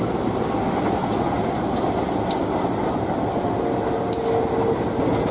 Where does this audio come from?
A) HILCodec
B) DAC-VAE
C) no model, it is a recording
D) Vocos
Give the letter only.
C